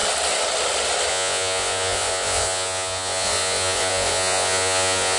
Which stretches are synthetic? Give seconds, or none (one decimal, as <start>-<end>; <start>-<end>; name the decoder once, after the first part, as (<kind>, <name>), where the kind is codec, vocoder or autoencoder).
1.1-5.2 (vocoder, Vocos)